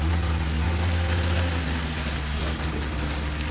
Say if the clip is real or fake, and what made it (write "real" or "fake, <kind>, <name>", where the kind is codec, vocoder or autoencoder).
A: real